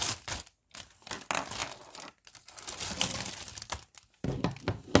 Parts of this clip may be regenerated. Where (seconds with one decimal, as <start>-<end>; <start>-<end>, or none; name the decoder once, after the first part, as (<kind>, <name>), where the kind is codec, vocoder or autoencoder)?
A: none